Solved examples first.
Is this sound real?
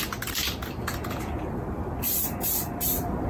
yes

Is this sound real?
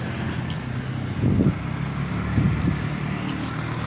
yes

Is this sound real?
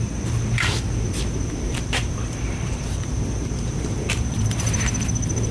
no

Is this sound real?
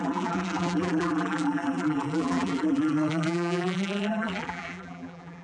no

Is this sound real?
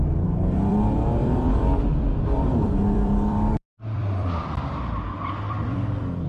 no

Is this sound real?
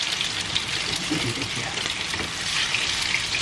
yes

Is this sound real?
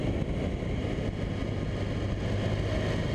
yes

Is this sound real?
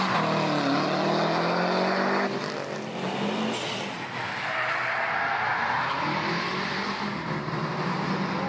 yes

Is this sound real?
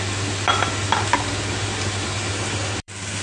no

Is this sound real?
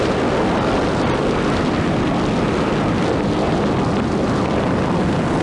yes